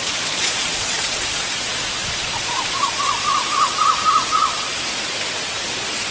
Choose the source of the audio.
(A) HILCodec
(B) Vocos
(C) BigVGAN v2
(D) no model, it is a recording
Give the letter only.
B